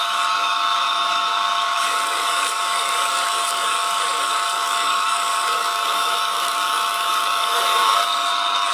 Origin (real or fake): fake